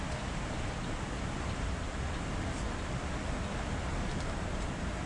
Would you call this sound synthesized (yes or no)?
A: no